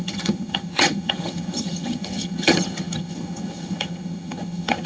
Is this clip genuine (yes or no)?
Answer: no